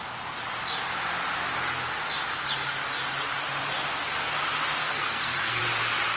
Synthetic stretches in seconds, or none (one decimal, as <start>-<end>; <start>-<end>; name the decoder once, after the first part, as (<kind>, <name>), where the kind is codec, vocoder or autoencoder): 4.8-5.6 (codec, SNAC)